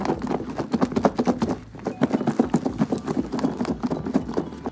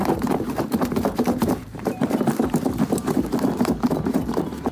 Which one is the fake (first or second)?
second